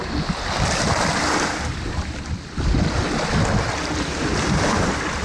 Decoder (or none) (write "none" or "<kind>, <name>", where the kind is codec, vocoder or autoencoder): none